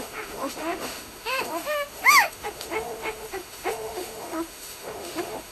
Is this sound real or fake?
fake